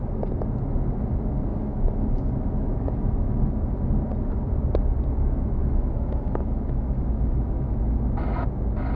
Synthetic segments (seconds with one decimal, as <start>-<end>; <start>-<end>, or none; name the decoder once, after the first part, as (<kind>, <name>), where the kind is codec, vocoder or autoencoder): 1.5-3.4 (autoencoder, DAC-VAE); 5.6-7.8